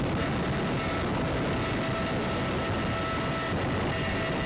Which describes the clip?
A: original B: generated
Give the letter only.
A